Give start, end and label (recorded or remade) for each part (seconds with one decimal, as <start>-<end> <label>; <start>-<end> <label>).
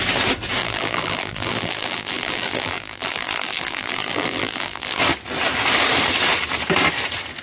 0.0-0.6 recorded; 0.6-5.0 remade; 5.0-7.4 recorded